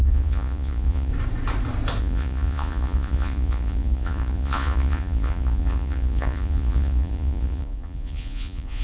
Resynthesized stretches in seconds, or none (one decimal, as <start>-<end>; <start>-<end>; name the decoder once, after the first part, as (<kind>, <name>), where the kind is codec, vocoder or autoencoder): 0.0-1.1 (vocoder, Vocos); 2.0-8.8